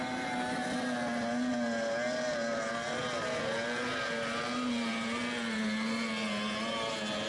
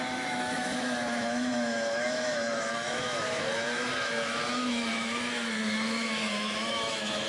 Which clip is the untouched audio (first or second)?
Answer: first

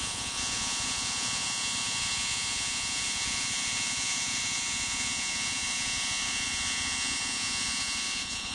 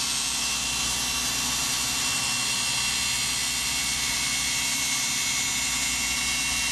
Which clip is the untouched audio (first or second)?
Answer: second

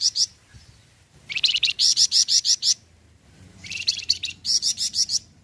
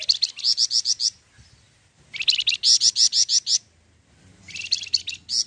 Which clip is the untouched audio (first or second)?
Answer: second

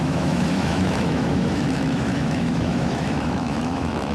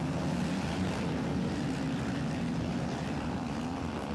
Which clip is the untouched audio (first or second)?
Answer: second